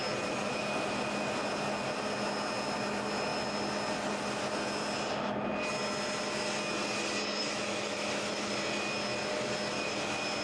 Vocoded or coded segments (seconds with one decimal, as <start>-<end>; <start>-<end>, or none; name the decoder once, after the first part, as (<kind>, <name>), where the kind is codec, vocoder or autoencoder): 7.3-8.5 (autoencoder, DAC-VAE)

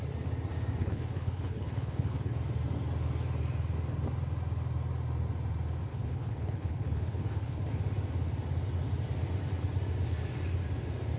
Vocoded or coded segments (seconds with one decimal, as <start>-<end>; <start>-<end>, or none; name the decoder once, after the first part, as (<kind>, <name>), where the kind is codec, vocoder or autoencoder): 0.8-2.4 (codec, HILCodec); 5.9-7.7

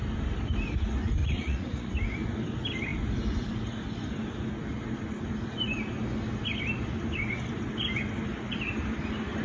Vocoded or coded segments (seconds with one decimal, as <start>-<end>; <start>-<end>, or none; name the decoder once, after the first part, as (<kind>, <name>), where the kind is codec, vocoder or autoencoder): 1.2-1.9 (vocoder, Vocos)

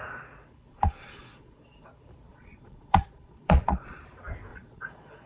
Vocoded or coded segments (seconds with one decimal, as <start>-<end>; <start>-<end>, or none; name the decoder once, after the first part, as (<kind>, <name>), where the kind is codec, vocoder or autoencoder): 0.7-1.9 (vocoder, Vocos); 2.3-4.0; 4.5-5.3

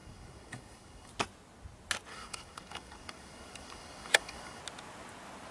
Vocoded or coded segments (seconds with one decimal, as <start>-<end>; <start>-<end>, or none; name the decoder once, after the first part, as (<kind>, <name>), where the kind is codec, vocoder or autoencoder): 0.0-1.1 (codec, DAC); 2.1-4.6

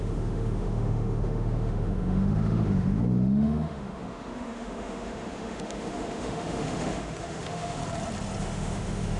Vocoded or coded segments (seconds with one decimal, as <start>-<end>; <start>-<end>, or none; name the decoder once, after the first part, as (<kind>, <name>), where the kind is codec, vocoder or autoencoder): 0.0-7.8 (autoencoder, DAC-VAE); 8.4-9.2